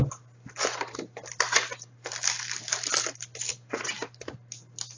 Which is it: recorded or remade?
recorded